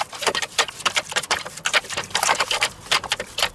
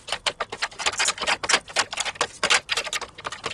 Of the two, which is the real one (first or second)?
second